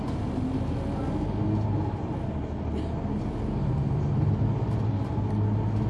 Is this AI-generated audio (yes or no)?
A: no